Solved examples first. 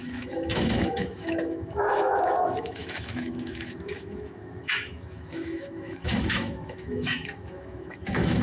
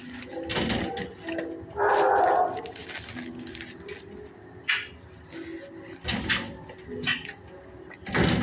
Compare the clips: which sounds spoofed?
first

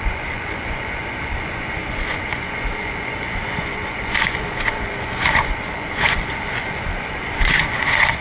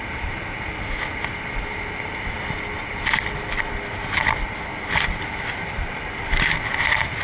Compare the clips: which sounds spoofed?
first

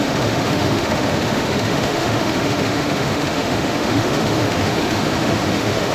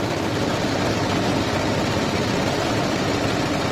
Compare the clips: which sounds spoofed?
first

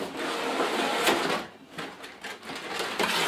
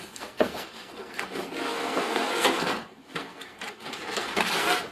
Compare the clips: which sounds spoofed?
second